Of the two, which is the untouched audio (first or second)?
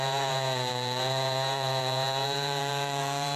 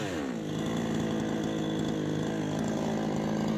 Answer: second